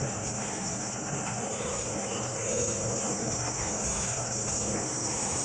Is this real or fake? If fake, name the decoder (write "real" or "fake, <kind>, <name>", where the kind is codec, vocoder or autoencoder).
fake, codec, SNAC